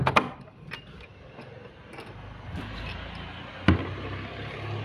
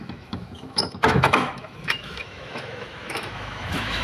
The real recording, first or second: first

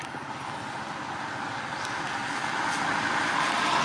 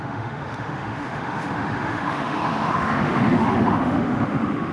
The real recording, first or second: first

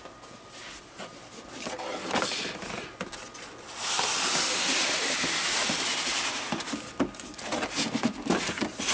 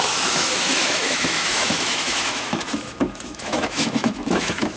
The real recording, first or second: first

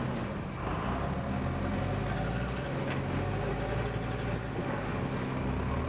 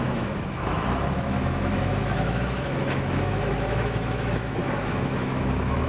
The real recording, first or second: first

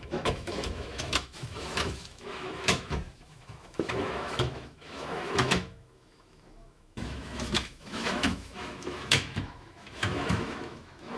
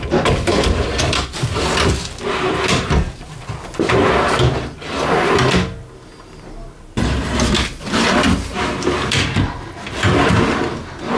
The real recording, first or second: second